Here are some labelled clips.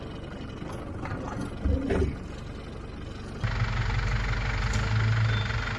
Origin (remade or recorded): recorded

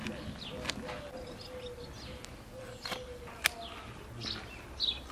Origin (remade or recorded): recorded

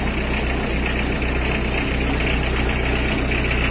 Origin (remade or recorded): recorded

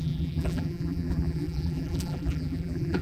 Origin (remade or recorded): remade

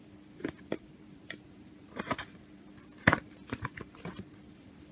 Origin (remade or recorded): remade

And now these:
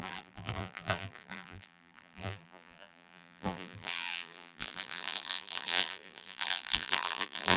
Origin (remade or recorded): remade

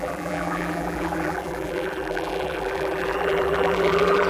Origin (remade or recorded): remade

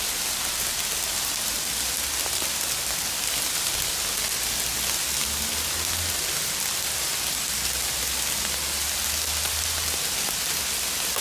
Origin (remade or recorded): recorded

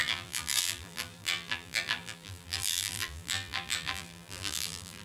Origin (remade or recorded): remade